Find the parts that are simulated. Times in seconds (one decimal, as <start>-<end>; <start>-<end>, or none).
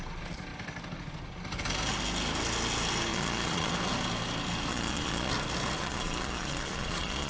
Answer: 3.1-3.7; 4.7-5.3; 5.8-7.3